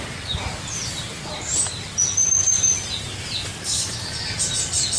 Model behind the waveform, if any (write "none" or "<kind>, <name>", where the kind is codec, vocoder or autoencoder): none